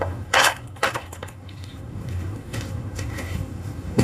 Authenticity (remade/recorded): remade